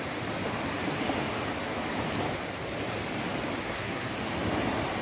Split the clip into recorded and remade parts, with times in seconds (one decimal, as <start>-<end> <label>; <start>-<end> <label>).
0.0-3.6 recorded; 3.6-4.1 remade; 4.1-5.0 recorded

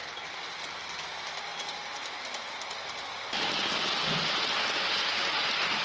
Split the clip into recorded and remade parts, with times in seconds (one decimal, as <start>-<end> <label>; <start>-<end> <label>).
0.0-5.8 recorded

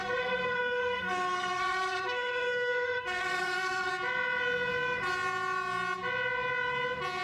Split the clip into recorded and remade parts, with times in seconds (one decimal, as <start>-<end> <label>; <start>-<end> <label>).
0.0-3.9 remade; 3.9-7.2 recorded

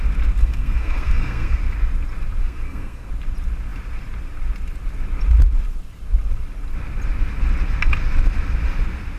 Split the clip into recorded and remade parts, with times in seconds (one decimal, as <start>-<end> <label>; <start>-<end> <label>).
0.0-0.4 recorded; 0.4-1.6 remade; 1.6-2.4 recorded; 2.4-3.1 remade; 3.1-9.2 recorded